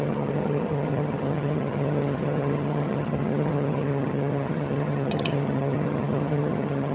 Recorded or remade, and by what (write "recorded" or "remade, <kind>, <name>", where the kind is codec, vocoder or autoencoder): remade, vocoder, HiFi-GAN